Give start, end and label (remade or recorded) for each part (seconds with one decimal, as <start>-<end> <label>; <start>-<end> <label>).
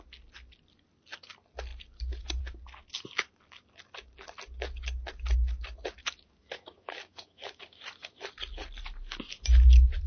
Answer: 0.0-6.0 recorded; 6.0-8.2 remade; 8.2-10.1 recorded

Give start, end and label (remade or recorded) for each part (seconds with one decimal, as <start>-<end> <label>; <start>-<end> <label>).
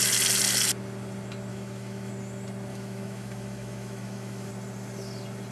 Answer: 0.0-1.5 recorded; 1.5-2.1 remade; 2.1-2.7 recorded; 2.7-4.5 remade; 4.5-5.5 recorded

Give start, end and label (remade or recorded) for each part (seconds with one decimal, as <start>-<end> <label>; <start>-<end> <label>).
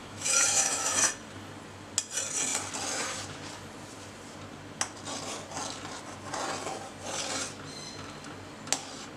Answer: 0.0-1.1 remade; 1.1-9.2 recorded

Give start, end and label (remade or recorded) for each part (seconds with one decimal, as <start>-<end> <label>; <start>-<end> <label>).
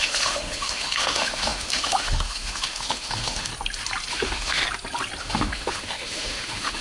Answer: 0.0-3.5 remade; 3.5-4.1 recorded; 4.1-4.6 remade; 4.6-5.2 recorded; 5.2-6.8 remade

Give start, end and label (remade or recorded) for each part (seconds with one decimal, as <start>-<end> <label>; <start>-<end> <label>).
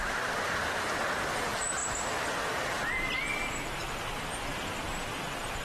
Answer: 0.0-5.6 recorded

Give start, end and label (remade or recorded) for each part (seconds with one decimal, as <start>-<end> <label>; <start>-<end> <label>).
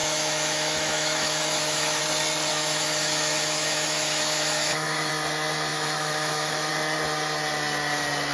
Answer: 0.0-2.0 remade; 2.0-2.5 recorded; 2.5-5.1 remade; 5.1-5.7 recorded; 5.7-6.7 remade; 6.7-8.3 recorded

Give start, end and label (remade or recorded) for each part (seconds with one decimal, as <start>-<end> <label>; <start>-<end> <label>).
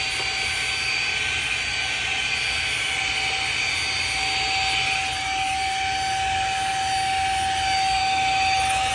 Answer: 0.0-8.0 recorded; 8.0-8.9 remade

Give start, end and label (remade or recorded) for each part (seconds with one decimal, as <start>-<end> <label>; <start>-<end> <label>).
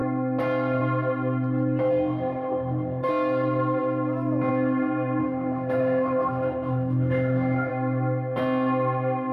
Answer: 0.0-1.9 recorded; 1.9-3.1 remade; 3.1-5.2 recorded; 5.2-7.7 remade; 7.7-9.3 recorded